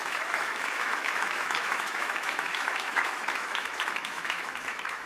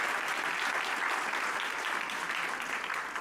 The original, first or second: second